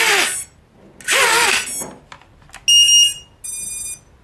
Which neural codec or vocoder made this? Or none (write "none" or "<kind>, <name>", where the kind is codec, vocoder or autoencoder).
none